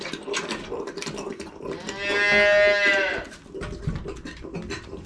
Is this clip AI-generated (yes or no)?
no